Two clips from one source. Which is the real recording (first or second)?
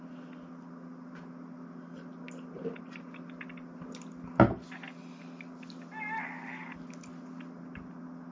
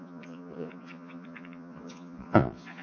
first